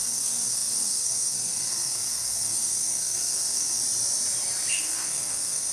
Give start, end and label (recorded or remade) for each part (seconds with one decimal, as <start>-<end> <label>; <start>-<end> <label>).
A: 0.0-3.8 remade; 3.8-4.7 recorded; 4.7-5.7 remade